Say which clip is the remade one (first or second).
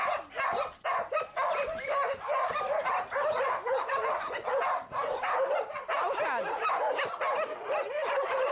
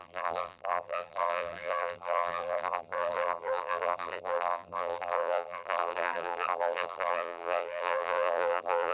second